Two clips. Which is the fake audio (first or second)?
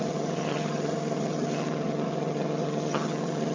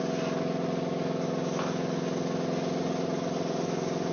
first